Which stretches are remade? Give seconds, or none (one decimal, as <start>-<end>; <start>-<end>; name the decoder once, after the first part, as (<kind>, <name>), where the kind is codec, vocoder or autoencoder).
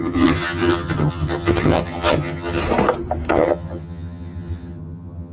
0.0-2.6 (vocoder, HiFi-GAN); 3.3-5.3